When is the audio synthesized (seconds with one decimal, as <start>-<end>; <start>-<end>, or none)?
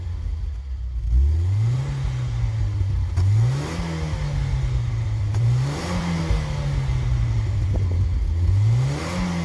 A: 5.3-6.2